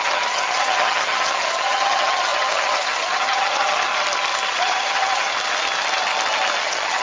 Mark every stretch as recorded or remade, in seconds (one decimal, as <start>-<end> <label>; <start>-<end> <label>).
0.0-3.9 remade; 3.9-4.6 recorded; 4.6-5.3 remade; 5.3-6.6 recorded; 6.6-7.0 remade

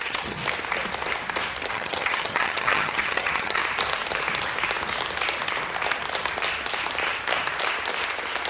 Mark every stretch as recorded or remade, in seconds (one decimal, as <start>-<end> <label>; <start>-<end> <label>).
0.0-0.4 remade; 0.4-1.7 recorded; 1.7-3.6 remade; 3.6-8.5 recorded

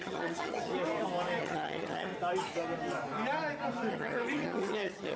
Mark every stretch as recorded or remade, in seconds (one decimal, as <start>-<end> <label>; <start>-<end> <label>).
0.0-0.7 remade; 0.7-1.4 recorded; 1.4-2.1 remade; 2.1-3.9 recorded; 3.9-5.2 remade